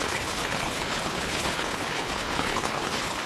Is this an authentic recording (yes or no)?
no